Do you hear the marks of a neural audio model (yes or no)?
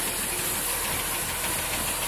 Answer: no